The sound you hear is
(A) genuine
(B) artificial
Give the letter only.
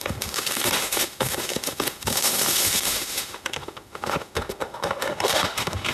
B